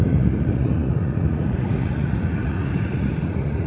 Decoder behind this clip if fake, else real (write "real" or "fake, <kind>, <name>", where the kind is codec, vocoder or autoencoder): fake, vocoder, Vocos